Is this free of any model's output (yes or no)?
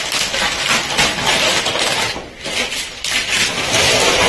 yes